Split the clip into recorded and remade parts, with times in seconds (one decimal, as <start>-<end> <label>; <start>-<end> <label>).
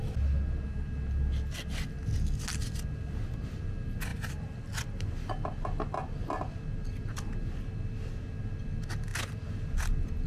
0.0-10.3 recorded